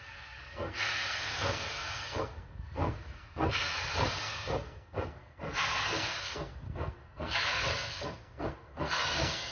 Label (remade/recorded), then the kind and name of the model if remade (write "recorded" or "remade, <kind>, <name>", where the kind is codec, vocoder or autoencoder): remade, codec, SNAC